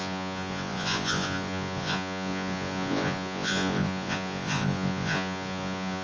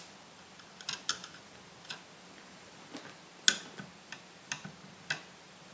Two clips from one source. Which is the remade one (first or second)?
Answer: first